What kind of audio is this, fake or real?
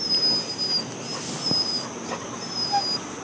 real